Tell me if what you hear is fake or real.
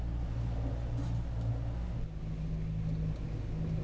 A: real